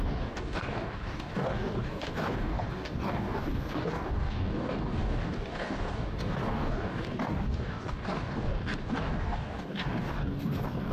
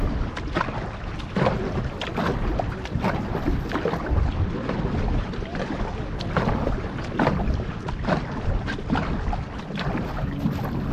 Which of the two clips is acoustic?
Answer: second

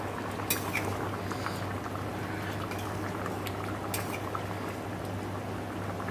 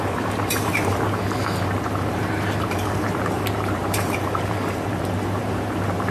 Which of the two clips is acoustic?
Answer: first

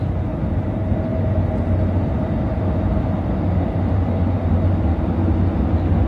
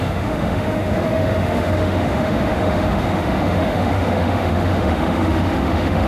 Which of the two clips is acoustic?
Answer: first